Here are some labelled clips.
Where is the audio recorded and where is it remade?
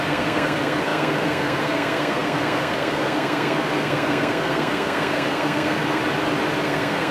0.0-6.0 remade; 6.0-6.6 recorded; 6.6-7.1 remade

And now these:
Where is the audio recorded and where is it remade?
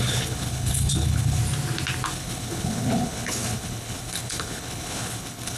0.0-1.4 remade; 1.4-2.1 recorded; 2.1-5.6 remade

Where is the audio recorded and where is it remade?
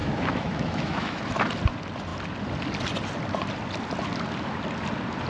0.0-1.2 remade; 1.2-5.3 recorded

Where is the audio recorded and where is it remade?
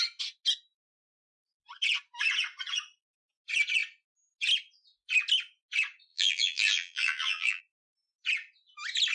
0.0-6.1 recorded; 6.1-7.6 remade; 7.6-9.1 recorded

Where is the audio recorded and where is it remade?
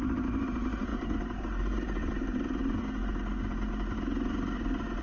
0.0-2.6 remade; 2.6-5.0 recorded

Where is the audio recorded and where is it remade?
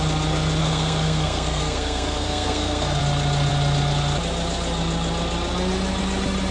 0.0-0.6 recorded; 0.6-3.0 remade; 3.0-6.5 recorded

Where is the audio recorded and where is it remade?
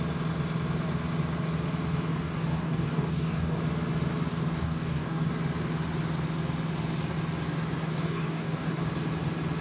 0.0-2.1 recorded; 2.1-3.6 remade; 3.6-4.3 recorded; 4.3-5.3 remade; 5.3-7.9 recorded; 7.9-8.8 remade; 8.8-9.6 recorded